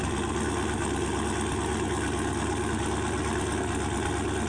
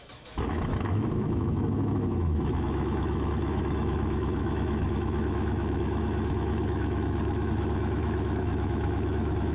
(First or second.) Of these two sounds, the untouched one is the first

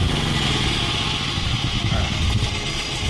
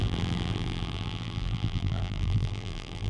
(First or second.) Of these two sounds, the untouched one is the first